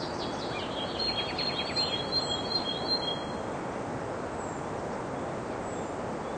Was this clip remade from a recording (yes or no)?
no